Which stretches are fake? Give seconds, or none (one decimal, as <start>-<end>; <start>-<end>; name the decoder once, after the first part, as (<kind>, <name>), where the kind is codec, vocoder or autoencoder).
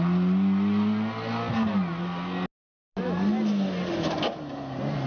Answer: none